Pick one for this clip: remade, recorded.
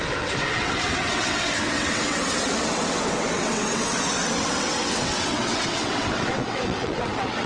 remade